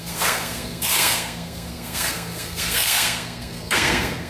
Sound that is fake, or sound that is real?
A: fake